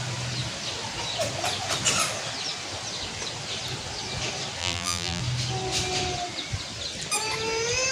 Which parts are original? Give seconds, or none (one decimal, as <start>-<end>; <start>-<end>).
0.0-4.6; 5.2-7.9